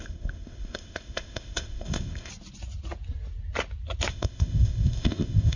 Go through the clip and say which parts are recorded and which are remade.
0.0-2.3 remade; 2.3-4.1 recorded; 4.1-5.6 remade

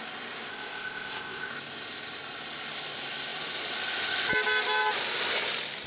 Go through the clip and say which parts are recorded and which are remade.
0.0-0.5 recorded; 0.5-1.5 remade; 1.5-5.9 recorded

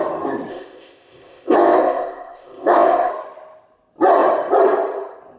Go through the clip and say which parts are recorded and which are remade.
0.0-0.5 recorded; 0.5-3.1 remade; 3.1-5.4 recorded